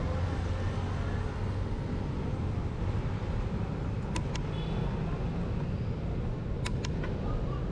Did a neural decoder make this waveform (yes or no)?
no